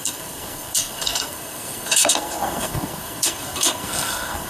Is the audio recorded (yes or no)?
no